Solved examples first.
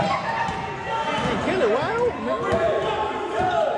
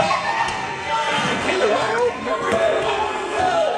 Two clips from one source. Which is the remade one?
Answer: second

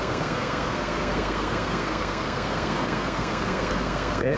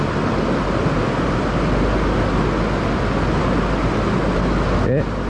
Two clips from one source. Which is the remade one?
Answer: first